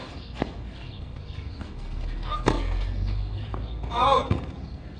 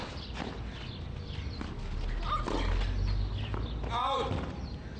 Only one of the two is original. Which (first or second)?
second